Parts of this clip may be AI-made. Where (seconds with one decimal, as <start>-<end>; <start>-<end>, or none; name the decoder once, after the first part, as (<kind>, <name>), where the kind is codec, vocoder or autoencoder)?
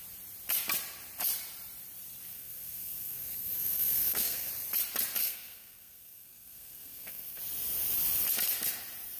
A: 2.3-4.5 (codec, SNAC); 5.2-7.4